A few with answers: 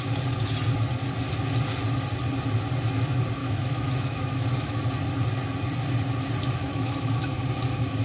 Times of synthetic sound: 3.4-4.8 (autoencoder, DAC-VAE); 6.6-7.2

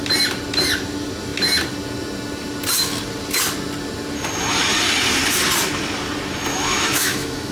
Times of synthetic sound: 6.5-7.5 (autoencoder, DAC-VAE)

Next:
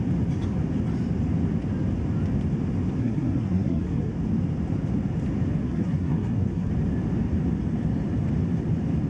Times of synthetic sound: 3.0-4.1 (codec, SNAC); 5.6-6.7

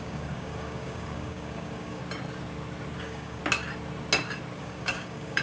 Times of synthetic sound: 0.0-2.0 (codec, DAC); 3.0-3.4; 4.6-5.4

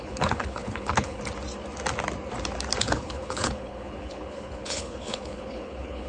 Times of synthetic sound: 0.0-1.2 (codec, HILCodec); 2.8-6.1